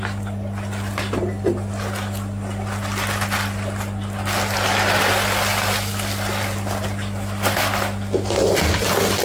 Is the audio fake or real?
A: real